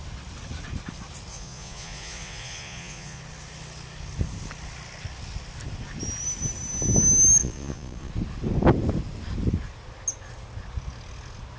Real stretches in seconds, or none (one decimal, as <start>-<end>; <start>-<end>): 0.0-1.3; 3.2-7.4; 8.1-11.6